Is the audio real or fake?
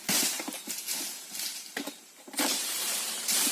fake